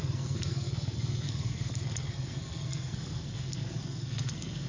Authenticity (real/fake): fake